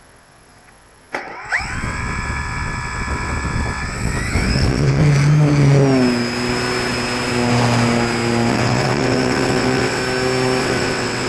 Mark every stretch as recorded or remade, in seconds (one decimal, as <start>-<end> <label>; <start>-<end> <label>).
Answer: 0.0-5.0 remade; 5.0-8.5 recorded; 8.5-10.0 remade; 10.0-10.6 recorded; 10.6-11.3 remade